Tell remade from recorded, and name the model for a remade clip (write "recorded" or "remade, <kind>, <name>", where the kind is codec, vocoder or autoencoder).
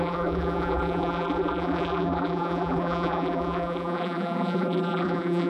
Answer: remade, vocoder, BigVGAN v2